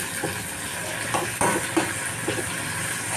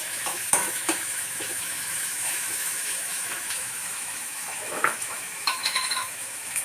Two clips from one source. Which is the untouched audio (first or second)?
first